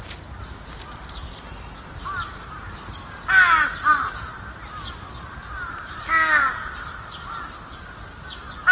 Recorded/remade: recorded